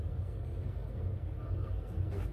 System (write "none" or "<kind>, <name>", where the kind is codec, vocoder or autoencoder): codec, SNAC